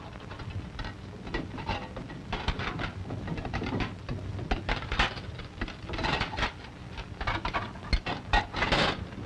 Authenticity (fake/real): real